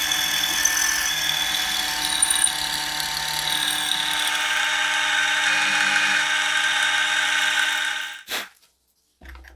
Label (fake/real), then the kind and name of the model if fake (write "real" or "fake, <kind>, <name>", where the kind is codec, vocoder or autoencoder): real